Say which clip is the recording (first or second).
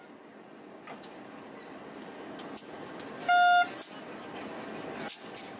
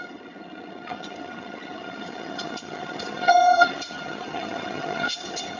first